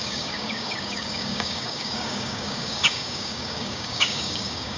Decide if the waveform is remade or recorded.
remade